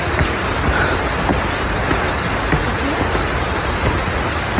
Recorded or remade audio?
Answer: recorded